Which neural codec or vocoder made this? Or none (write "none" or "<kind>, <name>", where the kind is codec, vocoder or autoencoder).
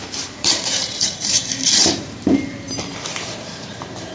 vocoder, BigVGAN v2